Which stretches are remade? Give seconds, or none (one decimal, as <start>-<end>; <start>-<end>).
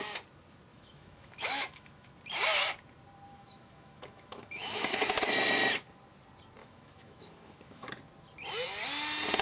0.7-2.1; 3.3-5.2; 6.6-7.9